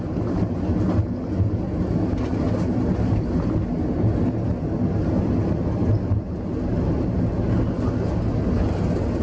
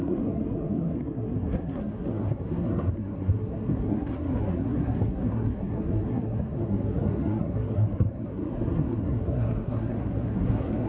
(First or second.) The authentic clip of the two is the first